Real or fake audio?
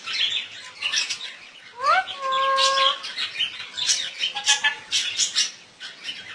real